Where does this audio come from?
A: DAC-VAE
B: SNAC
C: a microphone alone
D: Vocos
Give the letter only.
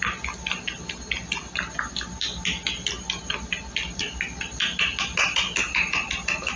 C